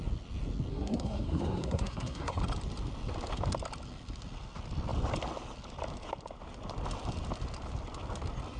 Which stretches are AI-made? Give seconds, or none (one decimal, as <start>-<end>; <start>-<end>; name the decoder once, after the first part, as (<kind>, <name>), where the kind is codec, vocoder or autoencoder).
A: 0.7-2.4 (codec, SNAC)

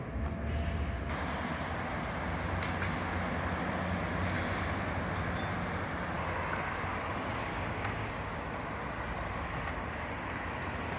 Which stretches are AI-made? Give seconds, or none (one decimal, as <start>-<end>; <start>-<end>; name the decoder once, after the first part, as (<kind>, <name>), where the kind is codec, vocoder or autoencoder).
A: 7.5-8.1 (codec, DAC)

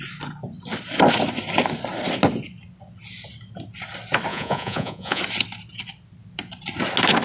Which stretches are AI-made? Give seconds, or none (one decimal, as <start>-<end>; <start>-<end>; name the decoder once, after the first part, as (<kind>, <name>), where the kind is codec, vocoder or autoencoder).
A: 4.3-5.2 (vocoder, Vocos)